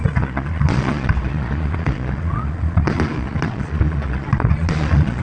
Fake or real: fake